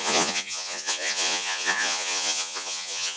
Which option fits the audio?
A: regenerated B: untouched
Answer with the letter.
A